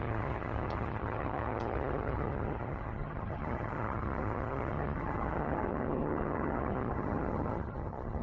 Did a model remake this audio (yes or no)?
yes